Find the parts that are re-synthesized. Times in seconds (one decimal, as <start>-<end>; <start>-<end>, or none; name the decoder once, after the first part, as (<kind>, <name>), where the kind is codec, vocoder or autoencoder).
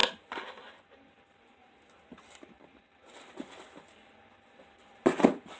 none